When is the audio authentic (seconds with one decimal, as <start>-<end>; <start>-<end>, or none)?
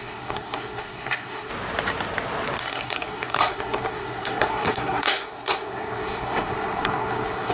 1.5-2.6